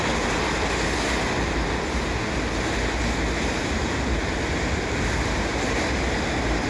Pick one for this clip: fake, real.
real